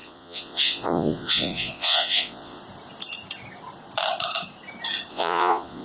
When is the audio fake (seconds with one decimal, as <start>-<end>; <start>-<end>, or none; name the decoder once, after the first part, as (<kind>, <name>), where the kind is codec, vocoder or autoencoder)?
0.0-2.6 (vocoder, Vocos); 5.1-5.8